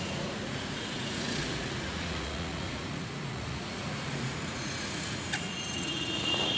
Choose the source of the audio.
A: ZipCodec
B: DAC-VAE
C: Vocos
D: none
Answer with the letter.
C